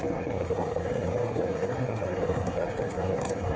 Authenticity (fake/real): fake